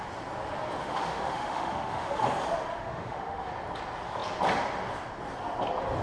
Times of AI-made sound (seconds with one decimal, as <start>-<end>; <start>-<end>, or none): 0.8-2.2; 2.7-3.5

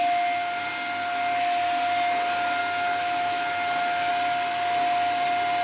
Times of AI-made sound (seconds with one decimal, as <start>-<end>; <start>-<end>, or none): 0.0-0.6; 2.6-4.1